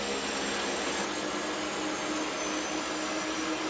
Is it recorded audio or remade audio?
recorded